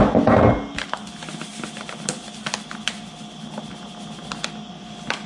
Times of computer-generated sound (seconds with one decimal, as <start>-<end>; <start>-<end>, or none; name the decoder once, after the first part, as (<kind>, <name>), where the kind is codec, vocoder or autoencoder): none